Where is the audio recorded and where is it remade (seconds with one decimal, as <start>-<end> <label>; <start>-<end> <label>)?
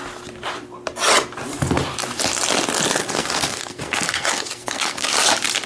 0.0-3.0 recorded; 3.0-5.1 remade; 5.1-5.7 recorded